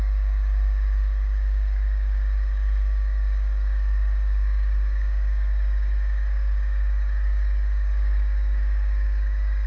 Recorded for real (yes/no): no